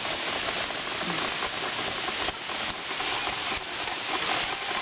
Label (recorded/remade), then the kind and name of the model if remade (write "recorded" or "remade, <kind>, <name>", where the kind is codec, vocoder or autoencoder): recorded